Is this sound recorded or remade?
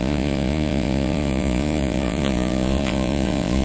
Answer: remade